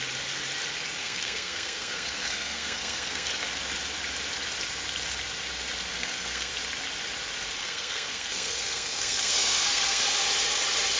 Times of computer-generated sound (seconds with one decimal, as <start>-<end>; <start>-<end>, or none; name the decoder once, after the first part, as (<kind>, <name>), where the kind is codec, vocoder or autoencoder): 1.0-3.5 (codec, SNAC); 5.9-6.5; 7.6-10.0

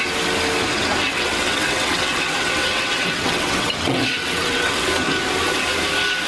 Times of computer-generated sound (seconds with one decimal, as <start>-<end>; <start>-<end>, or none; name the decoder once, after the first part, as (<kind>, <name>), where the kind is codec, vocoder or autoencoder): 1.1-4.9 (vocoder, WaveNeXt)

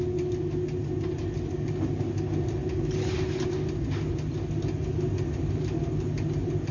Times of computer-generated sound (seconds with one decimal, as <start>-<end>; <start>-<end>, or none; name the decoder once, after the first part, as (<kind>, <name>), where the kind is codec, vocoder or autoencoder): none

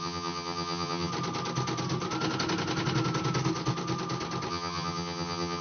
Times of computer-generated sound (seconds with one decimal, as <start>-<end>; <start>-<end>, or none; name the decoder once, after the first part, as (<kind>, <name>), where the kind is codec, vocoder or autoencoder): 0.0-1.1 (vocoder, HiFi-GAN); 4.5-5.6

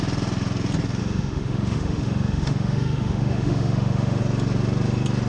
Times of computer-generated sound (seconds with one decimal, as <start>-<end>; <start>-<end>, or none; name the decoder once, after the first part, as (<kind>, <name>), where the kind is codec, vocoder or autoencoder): 1.0-4.2 (autoencoder, DAC-VAE)